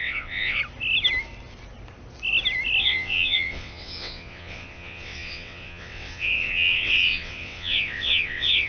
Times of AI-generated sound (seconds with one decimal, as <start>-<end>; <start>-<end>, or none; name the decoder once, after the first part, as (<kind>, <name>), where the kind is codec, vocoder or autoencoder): 0.0-0.6 (vocoder, WaveNeXt); 2.8-8.7